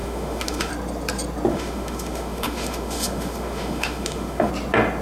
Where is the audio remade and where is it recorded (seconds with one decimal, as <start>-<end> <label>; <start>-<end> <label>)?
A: 0.0-0.7 remade; 0.7-1.5 recorded; 1.5-4.5 remade; 4.5-5.0 recorded